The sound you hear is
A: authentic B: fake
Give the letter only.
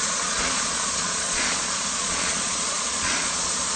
B